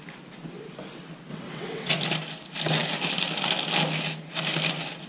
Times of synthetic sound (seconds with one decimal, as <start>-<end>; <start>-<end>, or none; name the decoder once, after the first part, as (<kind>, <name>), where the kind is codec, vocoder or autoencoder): 1.3-1.9 (vocoder, WaveNeXt)